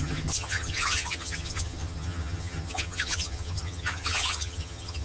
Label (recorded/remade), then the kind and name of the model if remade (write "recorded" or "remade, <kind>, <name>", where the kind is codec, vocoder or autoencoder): remade, vocoder, HiFi-GAN